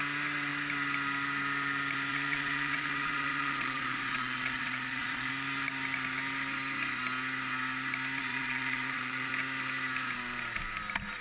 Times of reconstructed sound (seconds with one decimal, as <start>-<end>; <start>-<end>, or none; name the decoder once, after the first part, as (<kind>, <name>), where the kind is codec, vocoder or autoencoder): 2.1-5.3 (vocoder, Vocos); 8.2-9.3